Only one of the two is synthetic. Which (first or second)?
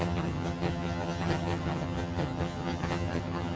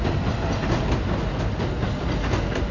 first